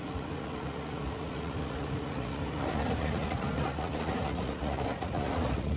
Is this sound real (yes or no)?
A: no